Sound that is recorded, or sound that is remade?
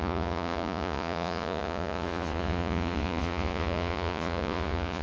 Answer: remade